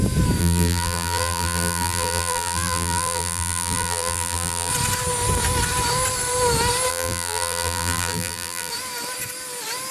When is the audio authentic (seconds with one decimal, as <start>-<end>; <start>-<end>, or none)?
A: 0.0-0.4; 4.7-6.9; 8.7-9.9